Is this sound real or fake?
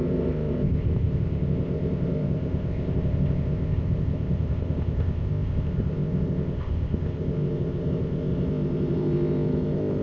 fake